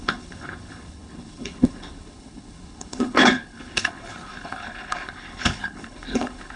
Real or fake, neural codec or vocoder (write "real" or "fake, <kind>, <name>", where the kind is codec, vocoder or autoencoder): fake, codec, HILCodec